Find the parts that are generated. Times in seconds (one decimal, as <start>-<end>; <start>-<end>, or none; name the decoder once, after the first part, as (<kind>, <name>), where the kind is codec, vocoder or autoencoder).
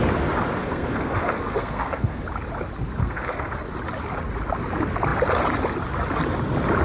0.6-2.2 (codec, SNAC); 3.0-3.5